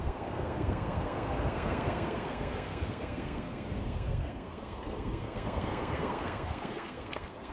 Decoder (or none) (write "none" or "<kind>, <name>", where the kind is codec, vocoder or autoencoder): codec, SNAC